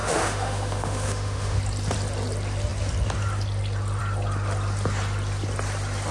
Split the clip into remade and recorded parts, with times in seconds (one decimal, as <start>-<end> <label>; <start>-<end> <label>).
0.0-1.6 remade; 1.6-6.1 recorded